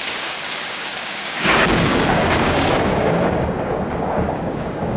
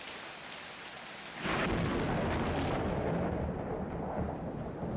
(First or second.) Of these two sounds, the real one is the second